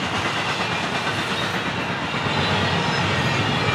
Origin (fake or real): real